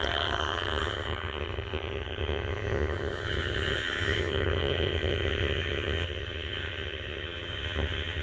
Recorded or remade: remade